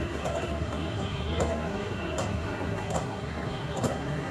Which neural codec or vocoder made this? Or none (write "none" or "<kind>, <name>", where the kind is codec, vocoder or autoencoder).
codec, SNAC